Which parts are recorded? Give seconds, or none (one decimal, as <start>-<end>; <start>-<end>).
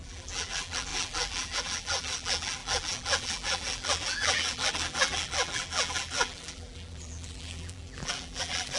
none